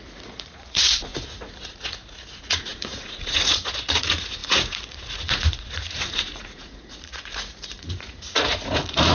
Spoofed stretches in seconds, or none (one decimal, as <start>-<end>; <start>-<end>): 0.0-9.1